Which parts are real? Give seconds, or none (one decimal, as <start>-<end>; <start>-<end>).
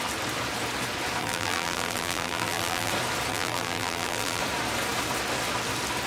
0.0-1.2; 2.9-3.3; 4.4-6.1